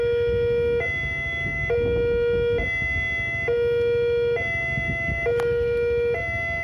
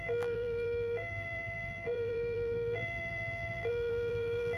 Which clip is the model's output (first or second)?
second